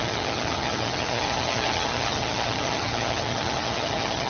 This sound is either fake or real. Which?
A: fake